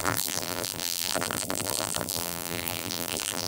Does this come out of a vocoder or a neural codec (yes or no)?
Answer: yes